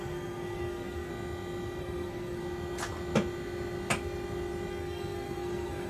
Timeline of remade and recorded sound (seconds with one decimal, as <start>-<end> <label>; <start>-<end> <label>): 0.0-1.1 remade; 1.1-1.8 recorded; 1.8-2.4 remade; 2.4-4.7 recorded; 4.7-5.9 remade